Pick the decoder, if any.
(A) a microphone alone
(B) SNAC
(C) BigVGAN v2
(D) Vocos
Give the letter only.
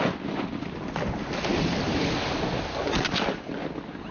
A